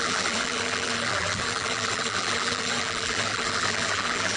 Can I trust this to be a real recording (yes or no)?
no